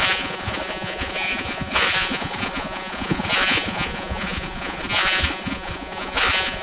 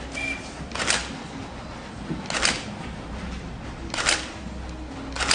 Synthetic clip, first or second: first